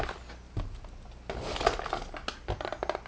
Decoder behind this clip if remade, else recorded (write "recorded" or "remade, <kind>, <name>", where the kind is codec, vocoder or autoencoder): recorded